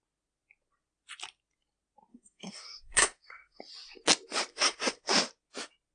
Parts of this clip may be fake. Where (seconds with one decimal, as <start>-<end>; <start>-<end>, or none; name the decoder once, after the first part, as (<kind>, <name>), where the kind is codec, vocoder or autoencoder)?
2.1-3.6 (codec, SNAC); 4.5-5.1